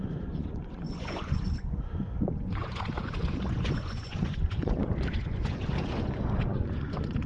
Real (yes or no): no